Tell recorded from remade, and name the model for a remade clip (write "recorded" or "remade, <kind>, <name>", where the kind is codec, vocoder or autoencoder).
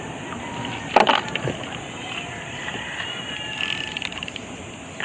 recorded